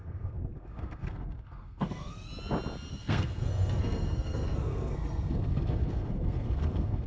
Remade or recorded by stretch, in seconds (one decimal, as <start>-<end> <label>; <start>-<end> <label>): 0.0-2.3 remade; 2.3-2.9 recorded; 2.9-7.1 remade